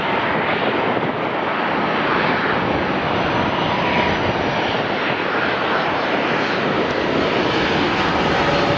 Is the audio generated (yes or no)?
no